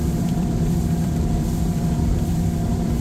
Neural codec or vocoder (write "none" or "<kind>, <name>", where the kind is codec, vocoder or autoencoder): vocoder, BigVGAN v2